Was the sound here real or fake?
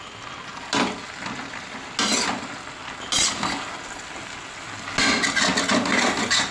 real